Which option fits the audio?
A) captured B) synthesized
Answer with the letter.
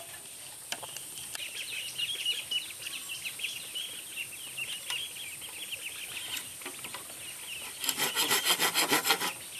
A